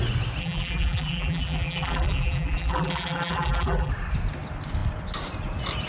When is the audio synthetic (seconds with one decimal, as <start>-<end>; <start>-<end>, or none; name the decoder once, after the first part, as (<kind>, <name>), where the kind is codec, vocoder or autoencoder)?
0.4-3.9 (vocoder, BigVGAN v2)